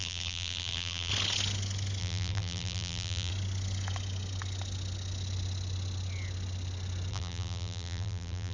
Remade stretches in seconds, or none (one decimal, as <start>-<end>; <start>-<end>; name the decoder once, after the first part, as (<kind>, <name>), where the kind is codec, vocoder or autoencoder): 0.0-1.1 (vocoder, BigVGAN v2); 2.0-3.3; 7.1-8.5